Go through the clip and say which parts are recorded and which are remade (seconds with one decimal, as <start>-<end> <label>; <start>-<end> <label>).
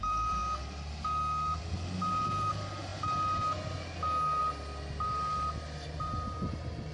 0.0-0.4 remade; 0.4-1.6 recorded; 1.6-2.9 remade; 2.9-4.4 recorded; 4.4-6.9 remade